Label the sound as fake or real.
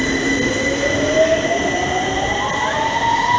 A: real